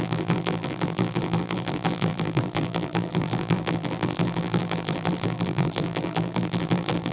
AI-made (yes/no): yes